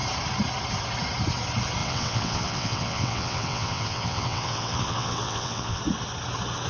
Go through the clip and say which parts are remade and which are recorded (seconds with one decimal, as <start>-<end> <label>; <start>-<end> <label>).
0.0-1.8 recorded; 1.8-5.8 remade; 5.8-6.7 recorded